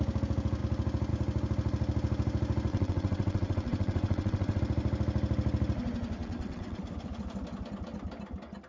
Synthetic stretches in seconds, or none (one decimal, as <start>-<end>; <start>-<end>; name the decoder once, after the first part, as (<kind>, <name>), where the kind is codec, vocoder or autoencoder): 2.7-4.6 (vocoder, WaveNeXt); 6.2-6.8